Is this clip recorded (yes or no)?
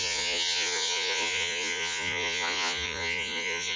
no